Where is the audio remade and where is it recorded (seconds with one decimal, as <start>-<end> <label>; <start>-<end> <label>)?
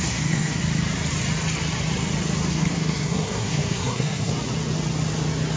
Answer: 0.0-0.6 remade; 0.6-2.5 recorded; 2.5-4.3 remade; 4.3-5.6 recorded